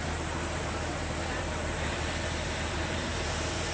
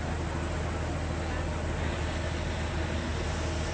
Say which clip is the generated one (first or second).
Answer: first